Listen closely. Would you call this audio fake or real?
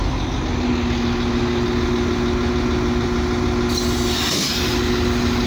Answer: real